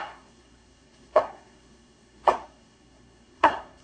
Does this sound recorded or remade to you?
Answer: remade